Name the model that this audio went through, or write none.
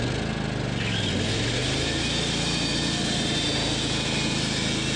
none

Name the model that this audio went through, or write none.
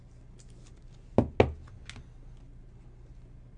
none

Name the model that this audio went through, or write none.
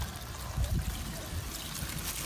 none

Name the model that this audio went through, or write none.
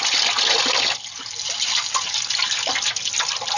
none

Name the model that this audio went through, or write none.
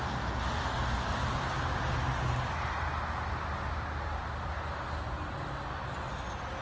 none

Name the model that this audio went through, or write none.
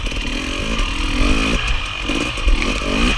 none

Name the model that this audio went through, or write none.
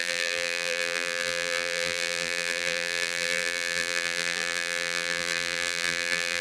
vocoder, BigVGAN v2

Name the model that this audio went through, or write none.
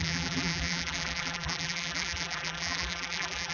vocoder, BigVGAN v2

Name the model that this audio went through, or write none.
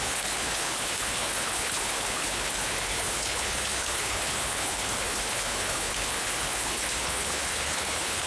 codec, HILCodec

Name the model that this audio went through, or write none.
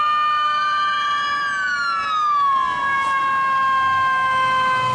none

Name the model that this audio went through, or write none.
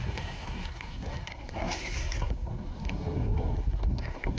codec, SNAC